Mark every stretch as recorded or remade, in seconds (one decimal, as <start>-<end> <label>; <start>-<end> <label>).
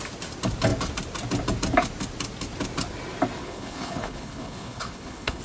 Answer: 0.0-3.4 recorded; 3.4-5.4 remade